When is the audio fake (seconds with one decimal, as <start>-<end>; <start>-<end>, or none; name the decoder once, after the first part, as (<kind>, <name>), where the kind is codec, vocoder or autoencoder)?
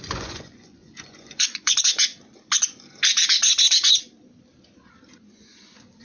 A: 0.0-2.1 (vocoder, Vocos); 5.3-6.0